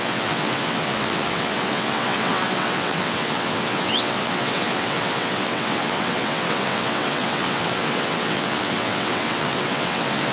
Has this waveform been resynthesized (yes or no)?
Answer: yes